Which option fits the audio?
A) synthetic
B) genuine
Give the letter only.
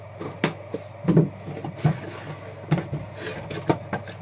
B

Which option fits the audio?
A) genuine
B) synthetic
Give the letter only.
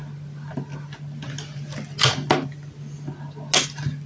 A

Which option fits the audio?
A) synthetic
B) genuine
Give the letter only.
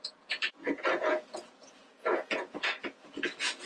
A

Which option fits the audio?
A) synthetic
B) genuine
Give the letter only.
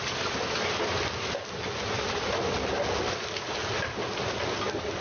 B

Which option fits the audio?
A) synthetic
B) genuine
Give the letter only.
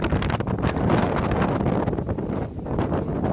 B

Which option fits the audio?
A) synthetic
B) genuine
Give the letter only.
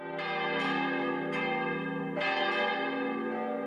B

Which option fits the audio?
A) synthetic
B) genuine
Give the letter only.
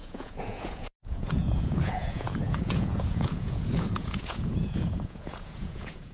A